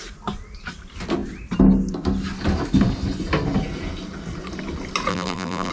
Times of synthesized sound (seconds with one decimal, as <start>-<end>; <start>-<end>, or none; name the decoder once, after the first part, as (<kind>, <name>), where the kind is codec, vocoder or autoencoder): 5.1-5.7 (vocoder, BigVGAN v2)